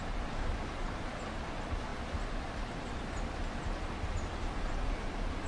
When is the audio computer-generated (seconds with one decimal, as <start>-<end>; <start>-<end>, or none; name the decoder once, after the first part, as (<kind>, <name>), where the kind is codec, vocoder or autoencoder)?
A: none

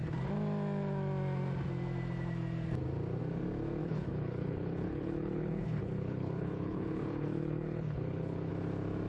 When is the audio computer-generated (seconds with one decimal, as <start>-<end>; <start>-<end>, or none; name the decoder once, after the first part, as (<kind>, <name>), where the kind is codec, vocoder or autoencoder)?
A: 3.8-8.5 (codec, HILCodec)

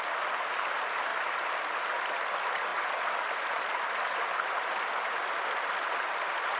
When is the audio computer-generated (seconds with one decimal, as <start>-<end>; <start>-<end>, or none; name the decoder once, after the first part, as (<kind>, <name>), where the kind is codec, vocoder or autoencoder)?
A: none

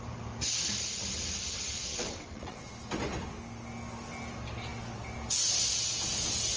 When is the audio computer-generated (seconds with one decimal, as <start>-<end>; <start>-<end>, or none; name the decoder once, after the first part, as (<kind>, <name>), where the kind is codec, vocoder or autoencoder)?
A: 1.9-2.6 (vocoder, WaveNeXt)

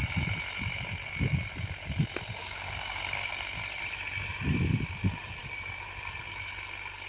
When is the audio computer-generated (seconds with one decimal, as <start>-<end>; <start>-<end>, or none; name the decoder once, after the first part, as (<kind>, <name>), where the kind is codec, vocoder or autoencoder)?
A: 2.4-3.3 (codec, DAC)

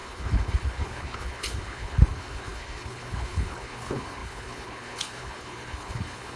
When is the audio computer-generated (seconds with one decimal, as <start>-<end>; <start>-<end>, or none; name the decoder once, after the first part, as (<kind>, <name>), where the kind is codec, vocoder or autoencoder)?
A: 0.0-6.4 (codec, HILCodec)

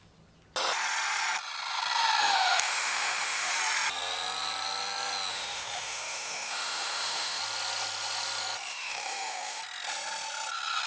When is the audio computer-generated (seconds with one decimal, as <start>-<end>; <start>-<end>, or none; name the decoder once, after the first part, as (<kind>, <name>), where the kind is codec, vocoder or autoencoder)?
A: 2.2-3.6 (autoencoder, DAC-VAE); 5.3-7.4; 8.7-9.6

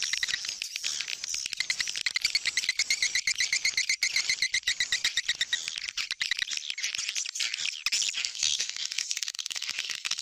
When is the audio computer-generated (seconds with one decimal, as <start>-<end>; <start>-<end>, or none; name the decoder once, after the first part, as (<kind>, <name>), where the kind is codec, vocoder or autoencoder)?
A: 8.2-10.2 (codec, SNAC)